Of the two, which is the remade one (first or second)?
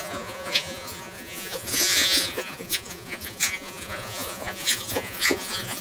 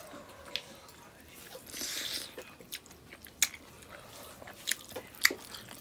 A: first